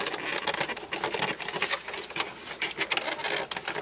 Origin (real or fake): real